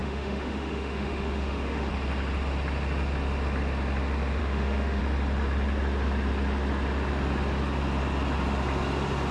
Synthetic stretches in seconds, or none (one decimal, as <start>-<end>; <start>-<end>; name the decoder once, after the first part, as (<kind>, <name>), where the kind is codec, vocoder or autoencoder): 0.0-1.9 (autoencoder, DAC-VAE); 4.4-5.0